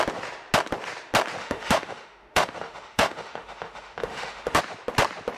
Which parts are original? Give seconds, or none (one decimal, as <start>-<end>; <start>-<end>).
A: 0.0-1.4; 4.6-5.4